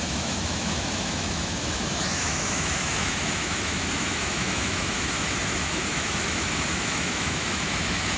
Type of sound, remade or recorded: remade